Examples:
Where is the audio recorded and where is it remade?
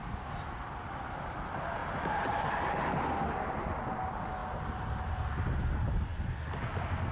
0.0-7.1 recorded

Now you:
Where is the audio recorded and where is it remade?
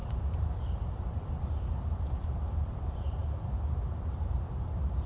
0.0-2.0 recorded; 2.0-3.2 remade; 3.2-5.1 recorded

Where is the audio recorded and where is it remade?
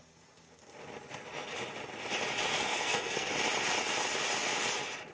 0.0-2.5 recorded; 2.5-3.3 remade; 3.3-5.1 recorded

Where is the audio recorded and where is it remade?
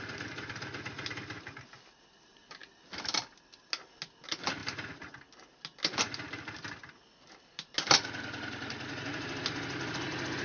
0.0-10.4 recorded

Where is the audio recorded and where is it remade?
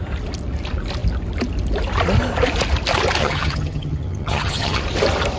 0.0-3.2 recorded; 3.2-4.8 remade; 4.8-5.4 recorded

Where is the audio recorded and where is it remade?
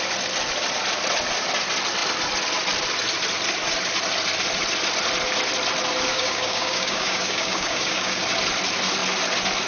0.0-6.1 recorded; 6.1-8.2 remade; 8.2-9.7 recorded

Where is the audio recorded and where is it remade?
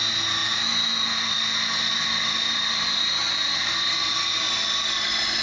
0.0-5.4 recorded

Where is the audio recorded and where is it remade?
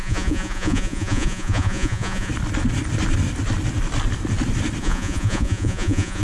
0.0-2.3 remade; 2.3-4.8 recorded; 4.8-6.2 remade